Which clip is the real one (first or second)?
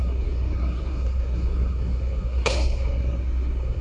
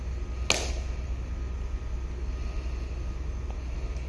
second